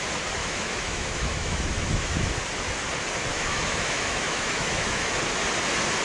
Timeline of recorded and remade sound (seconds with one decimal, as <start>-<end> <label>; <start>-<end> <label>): 0.0-0.4 recorded; 0.4-2.3 remade; 2.3-3.3 recorded; 3.3-5.1 remade; 5.1-6.0 recorded